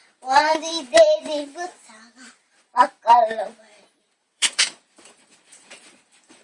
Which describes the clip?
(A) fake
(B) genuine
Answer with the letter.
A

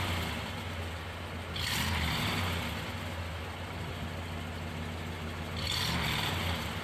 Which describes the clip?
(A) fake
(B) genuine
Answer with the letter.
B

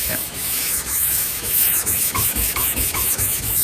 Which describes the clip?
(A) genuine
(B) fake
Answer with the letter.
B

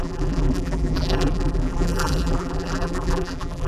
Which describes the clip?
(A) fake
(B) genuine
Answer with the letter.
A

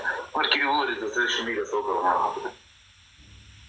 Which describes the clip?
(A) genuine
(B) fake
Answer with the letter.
A